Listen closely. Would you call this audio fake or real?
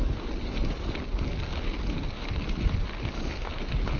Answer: real